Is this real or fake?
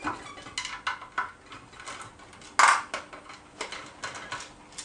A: real